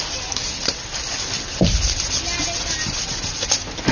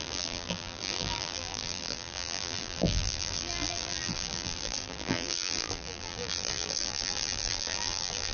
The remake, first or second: second